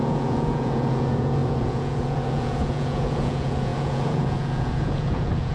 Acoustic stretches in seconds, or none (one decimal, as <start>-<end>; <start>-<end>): none